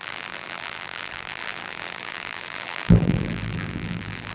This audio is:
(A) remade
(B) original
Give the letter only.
A